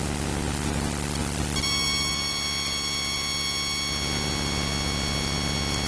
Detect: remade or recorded recorded